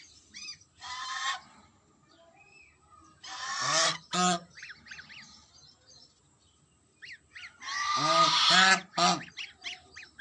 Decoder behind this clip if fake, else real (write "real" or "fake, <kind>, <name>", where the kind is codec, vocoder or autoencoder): real